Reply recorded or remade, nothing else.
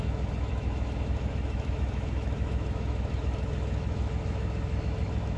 remade